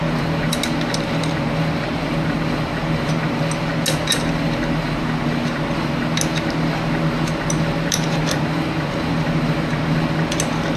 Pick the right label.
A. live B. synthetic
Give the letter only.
A